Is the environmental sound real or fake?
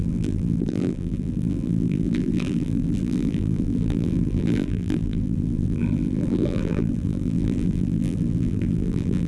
fake